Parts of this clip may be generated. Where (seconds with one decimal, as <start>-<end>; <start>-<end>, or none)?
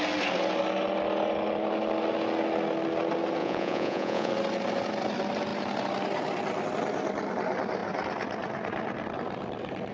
3.4-4.3